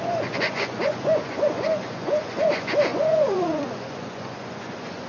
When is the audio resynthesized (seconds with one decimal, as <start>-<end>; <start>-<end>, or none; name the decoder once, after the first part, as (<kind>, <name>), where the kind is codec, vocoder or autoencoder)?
0.0-5.1 (vocoder, Vocos)